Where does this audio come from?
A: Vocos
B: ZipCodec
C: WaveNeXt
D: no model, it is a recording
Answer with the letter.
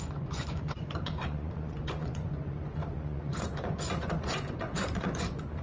A